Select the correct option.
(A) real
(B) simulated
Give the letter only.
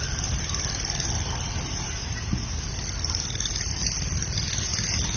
A